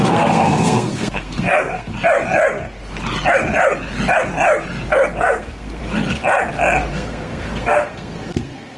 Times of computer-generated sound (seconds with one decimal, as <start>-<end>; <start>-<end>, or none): 0.0-1.9; 5.2-5.8; 6.9-8.8